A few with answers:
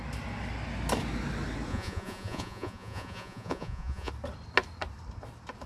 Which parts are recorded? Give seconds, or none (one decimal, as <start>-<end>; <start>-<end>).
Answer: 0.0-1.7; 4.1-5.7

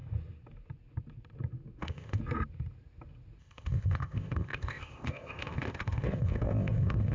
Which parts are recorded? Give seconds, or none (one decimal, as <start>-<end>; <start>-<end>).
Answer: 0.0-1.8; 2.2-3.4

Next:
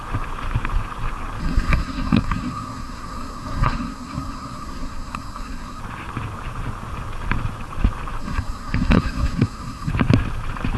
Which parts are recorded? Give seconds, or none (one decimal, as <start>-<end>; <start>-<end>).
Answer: 0.0-1.4; 5.8-8.2; 9.9-10.8

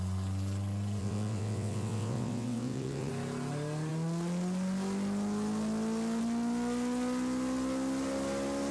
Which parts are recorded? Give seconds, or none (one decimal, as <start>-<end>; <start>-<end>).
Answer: 0.0-1.0; 3.1-8.7

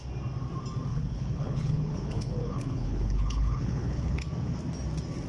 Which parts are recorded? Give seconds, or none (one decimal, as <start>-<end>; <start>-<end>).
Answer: 0.0-0.9; 4.1-5.3

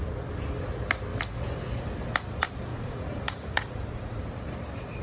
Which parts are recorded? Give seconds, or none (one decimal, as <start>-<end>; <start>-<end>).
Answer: 0.0-2.7; 4.2-5.0

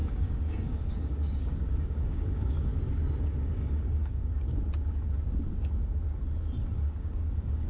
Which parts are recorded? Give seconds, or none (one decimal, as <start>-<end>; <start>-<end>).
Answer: 2.7-3.5; 4.5-6.8

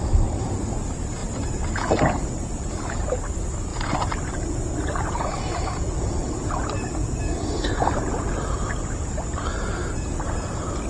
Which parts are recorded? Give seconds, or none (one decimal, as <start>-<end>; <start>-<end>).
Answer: 0.0-10.9